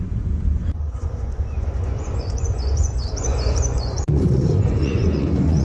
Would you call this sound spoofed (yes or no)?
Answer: yes